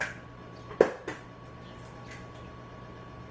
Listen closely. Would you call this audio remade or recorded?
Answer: recorded